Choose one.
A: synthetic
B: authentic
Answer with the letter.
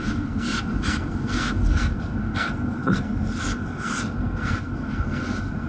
A